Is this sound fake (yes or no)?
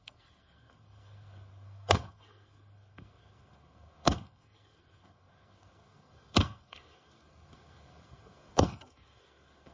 yes